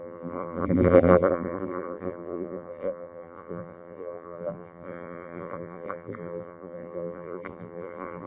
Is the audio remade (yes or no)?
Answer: yes